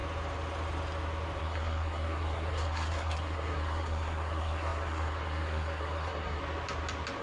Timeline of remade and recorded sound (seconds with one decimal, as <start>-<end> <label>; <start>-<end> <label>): 0.0-1.4 recorded; 1.4-6.4 remade; 6.4-7.2 recorded